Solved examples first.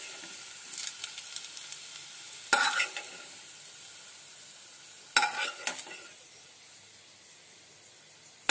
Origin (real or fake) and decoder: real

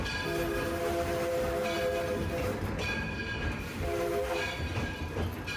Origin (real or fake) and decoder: real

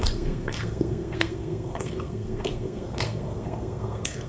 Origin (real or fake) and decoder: fake, codec, SNAC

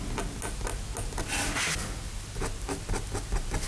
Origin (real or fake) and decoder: real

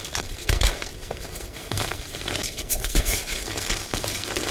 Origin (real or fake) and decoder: fake, codec, SNAC